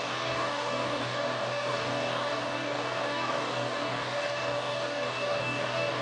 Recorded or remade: remade